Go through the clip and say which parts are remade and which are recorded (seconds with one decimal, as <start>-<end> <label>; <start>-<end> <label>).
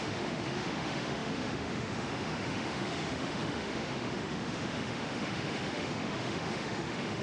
0.0-7.2 remade